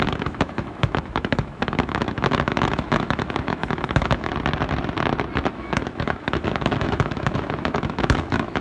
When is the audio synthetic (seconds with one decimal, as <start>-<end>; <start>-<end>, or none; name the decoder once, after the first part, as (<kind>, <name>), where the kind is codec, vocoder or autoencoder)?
0.0-4.3 (autoencoder, DAC-VAE); 5.5-8.6